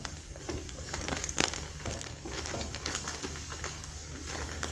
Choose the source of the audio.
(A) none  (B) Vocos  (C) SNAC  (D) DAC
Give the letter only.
D